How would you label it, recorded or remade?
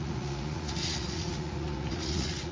remade